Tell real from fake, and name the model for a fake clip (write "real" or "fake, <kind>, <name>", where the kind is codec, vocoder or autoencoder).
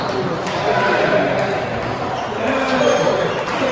real